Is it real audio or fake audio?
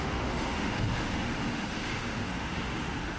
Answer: fake